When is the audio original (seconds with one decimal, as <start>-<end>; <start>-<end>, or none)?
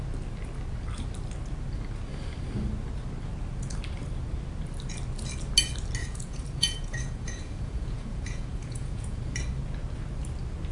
0.0-6.0; 9.2-10.7